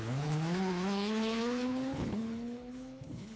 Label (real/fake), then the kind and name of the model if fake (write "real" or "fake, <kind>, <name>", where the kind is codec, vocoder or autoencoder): fake, codec, HILCodec